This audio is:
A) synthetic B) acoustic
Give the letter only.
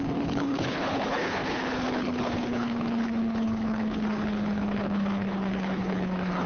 A